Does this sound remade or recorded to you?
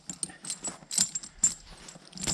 recorded